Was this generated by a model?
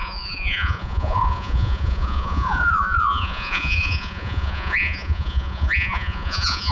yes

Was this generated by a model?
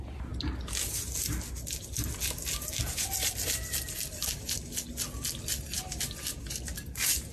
no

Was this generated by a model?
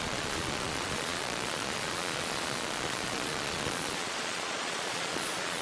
yes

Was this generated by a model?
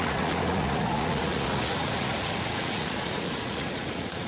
yes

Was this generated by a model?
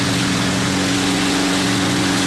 yes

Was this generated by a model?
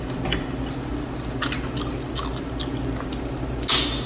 no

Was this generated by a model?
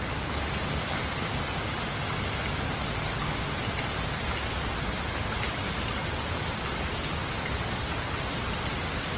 no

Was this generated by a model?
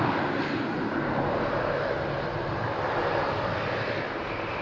no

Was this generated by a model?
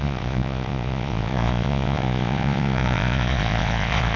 yes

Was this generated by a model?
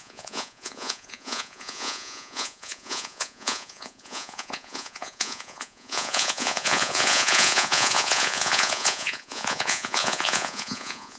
yes